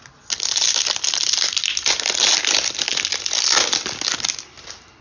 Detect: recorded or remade recorded